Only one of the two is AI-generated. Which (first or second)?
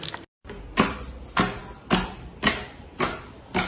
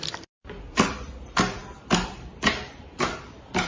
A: second